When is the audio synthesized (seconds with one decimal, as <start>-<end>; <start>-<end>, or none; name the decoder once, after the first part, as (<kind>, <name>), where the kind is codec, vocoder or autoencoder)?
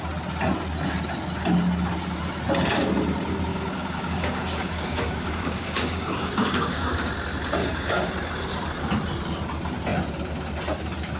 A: 3.5-7.1 (codec, DAC); 7.6-8.1